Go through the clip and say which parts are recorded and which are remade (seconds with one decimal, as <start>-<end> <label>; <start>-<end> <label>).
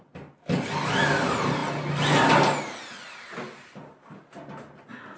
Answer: 0.0-5.2 recorded